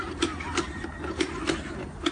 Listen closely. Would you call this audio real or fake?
real